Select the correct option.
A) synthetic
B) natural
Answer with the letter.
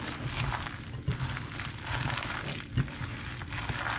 B